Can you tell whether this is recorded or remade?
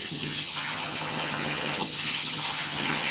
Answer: remade